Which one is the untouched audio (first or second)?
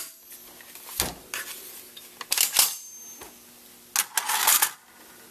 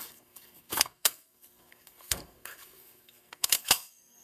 first